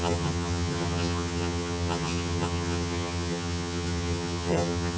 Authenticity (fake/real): fake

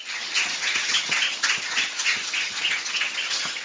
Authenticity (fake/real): fake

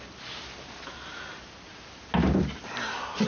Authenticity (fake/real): real